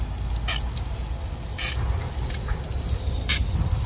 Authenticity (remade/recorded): recorded